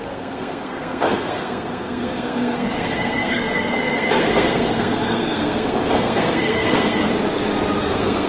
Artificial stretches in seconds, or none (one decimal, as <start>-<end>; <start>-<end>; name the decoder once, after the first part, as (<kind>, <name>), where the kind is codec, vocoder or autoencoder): 0.0-7.1 (codec, SNAC); 7.8-8.3